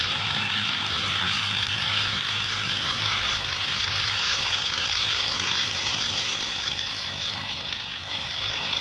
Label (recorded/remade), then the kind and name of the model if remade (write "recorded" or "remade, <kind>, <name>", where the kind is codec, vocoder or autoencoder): remade, codec, SNAC